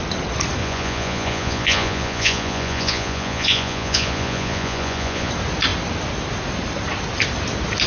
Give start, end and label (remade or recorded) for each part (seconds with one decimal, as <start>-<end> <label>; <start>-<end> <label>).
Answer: 0.0-0.6 recorded; 0.6-5.3 remade; 5.3-7.9 recorded